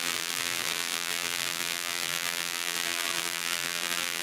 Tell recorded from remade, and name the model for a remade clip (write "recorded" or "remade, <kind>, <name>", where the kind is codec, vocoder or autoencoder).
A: remade, vocoder, BigVGAN v2